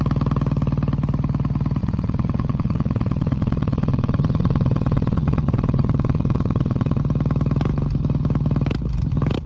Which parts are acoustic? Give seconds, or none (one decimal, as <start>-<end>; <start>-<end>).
0.0-1.8; 7.0-9.5